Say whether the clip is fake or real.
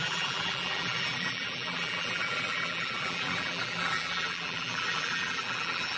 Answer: fake